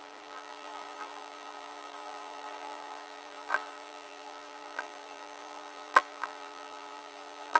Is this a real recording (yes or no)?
no